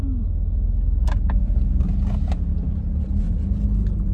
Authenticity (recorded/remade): recorded